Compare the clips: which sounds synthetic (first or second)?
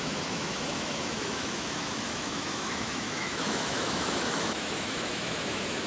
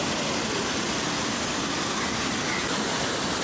first